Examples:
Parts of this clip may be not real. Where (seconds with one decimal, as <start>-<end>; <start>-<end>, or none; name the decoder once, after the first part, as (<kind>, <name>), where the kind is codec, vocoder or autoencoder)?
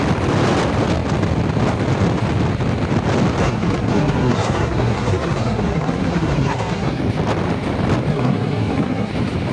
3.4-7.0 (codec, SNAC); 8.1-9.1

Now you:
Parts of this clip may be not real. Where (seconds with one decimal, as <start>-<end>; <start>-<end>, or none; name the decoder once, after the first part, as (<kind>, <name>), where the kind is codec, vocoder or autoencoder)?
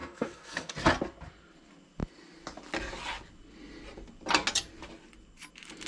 0.0-0.7 (codec, SNAC)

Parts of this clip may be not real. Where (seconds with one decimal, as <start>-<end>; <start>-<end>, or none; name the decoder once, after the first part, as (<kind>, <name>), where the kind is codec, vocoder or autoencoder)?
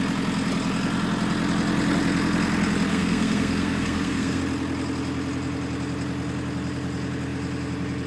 2.9-4.4 (codec, SNAC)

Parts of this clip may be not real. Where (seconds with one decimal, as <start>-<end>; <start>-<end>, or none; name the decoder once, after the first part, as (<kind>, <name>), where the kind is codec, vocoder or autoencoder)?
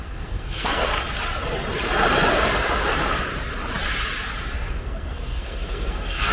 0.0-0.9 (codec, SNAC); 4.7-6.3